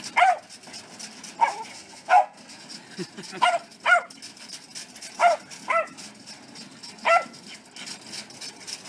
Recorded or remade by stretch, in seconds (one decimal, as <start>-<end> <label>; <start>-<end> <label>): 0.0-1.7 recorded; 1.7-2.6 remade; 2.6-8.9 recorded